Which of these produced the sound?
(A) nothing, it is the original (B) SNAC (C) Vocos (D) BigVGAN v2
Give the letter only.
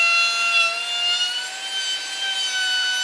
A